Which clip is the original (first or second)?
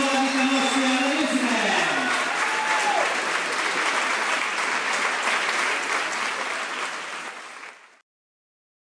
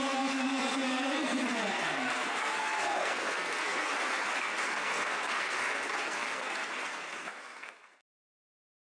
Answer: first